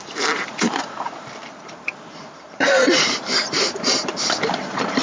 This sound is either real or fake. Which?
fake